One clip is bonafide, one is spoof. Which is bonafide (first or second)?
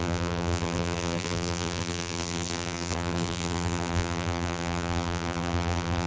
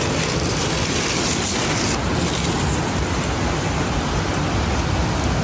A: second